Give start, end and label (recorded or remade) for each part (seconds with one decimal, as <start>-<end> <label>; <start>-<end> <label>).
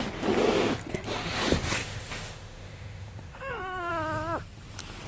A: 0.0-1.8 recorded; 1.8-3.9 remade; 3.9-5.1 recorded